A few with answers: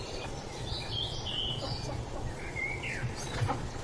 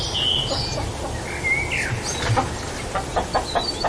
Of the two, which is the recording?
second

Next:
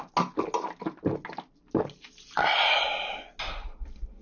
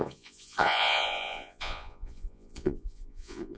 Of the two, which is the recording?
first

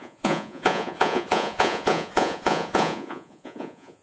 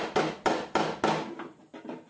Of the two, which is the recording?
second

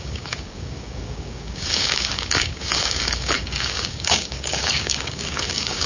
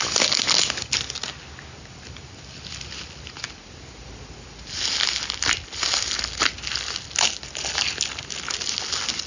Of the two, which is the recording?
second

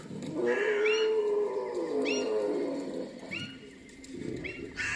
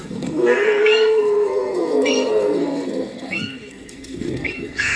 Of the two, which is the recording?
first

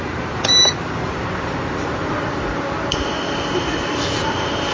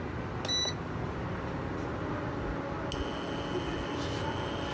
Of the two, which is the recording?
second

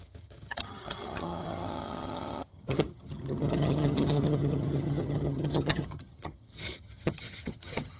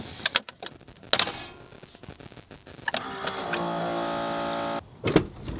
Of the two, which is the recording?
second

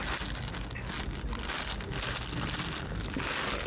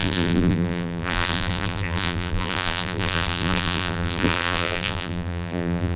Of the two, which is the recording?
first